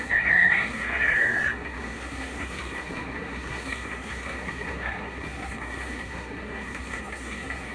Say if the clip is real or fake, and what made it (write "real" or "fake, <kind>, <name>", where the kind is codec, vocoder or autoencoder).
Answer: fake, codec, SNAC